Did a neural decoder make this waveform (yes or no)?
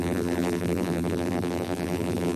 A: yes